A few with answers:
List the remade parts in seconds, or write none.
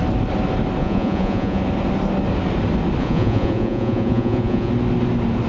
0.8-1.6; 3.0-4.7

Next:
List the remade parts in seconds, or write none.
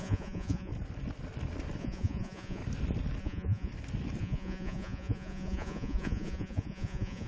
0.0-0.7; 1.8-2.6; 3.2-3.7; 4.2-7.3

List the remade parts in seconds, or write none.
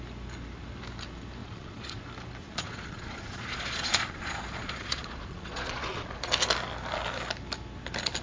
1.4-2.0; 2.4-6.3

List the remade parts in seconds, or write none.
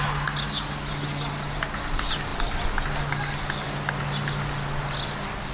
none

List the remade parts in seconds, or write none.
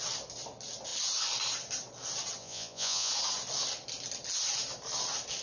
2.4-3.1